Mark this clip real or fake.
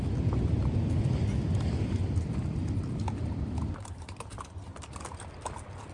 fake